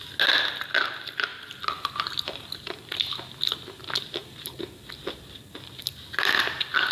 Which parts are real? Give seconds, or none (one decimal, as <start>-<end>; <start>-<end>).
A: 0.0-1.3; 1.9-4.2